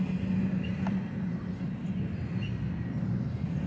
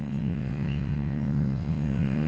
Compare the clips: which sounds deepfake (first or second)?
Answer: second